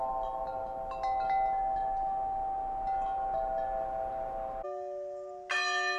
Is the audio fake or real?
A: real